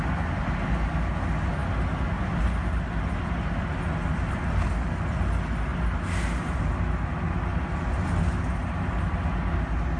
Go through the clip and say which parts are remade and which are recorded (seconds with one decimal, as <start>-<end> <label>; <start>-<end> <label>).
0.0-10.0 recorded